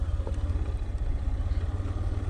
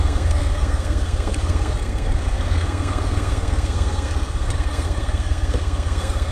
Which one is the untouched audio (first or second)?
first